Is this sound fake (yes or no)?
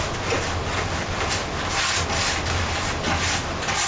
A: no